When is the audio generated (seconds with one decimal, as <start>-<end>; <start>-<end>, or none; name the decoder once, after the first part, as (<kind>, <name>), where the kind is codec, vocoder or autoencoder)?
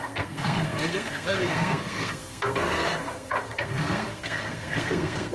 0.0-5.3 (codec, SNAC)